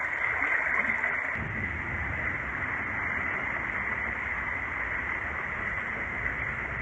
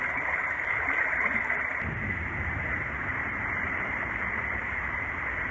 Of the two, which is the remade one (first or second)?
second